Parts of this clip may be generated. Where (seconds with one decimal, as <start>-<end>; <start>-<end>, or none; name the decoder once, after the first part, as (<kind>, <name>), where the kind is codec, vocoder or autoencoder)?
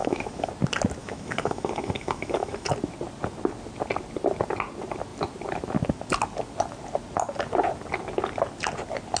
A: 0.0-0.5 (autoencoder, DAC-VAE); 1.0-2.7